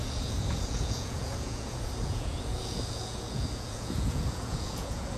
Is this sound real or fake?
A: fake